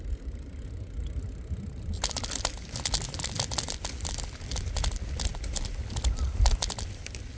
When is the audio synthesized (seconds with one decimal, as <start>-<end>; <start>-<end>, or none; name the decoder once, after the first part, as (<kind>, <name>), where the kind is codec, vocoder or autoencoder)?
none